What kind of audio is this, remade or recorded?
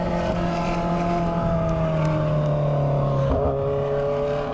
recorded